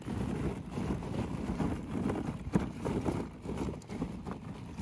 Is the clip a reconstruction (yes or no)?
no